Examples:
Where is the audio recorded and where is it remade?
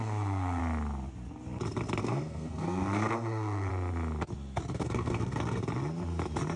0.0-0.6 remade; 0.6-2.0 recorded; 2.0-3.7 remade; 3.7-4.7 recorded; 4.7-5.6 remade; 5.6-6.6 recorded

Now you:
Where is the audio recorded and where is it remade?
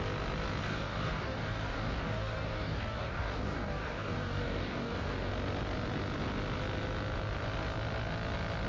0.0-0.6 recorded; 0.6-5.3 remade; 5.3-8.7 recorded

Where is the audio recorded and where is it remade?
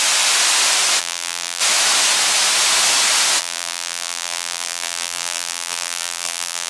0.0-1.0 recorded; 1.0-1.6 remade; 1.6-3.4 recorded; 3.4-6.7 remade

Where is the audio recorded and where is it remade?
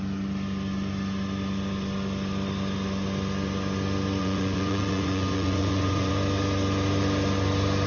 0.0-4.2 recorded; 4.2-6.1 remade; 6.1-7.9 recorded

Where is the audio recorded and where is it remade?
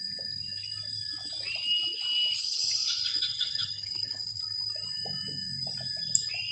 0.0-2.4 recorded; 2.4-4.4 remade; 4.4-6.5 recorded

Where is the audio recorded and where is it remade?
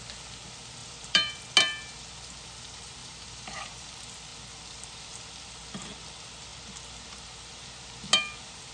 0.0-0.8 recorded; 0.8-1.3 remade; 1.3-3.0 recorded; 3.0-3.9 remade; 3.9-8.7 recorded